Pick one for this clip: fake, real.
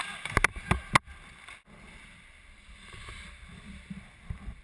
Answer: real